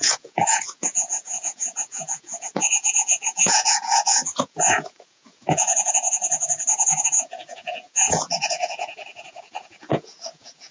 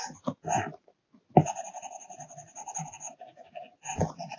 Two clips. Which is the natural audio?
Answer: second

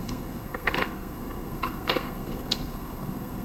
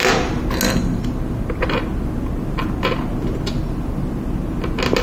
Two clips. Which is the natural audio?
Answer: second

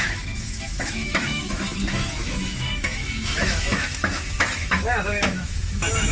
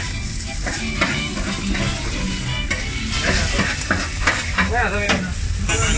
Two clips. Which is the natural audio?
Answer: second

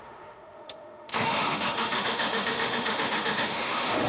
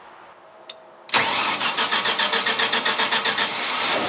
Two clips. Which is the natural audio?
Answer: second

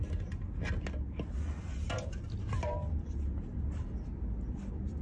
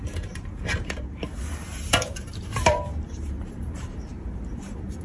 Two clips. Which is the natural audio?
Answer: first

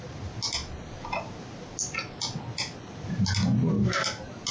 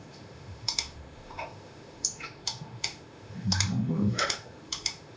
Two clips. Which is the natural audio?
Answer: first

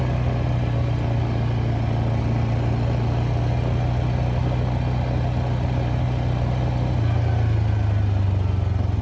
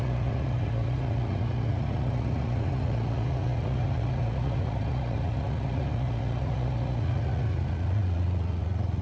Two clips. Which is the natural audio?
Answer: first